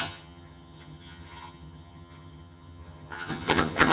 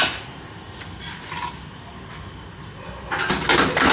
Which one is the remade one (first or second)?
first